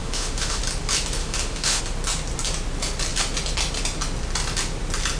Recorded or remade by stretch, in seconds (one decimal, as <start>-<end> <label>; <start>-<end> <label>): 0.0-0.6 remade; 0.6-1.2 recorded; 1.2-1.8 remade; 1.8-5.2 recorded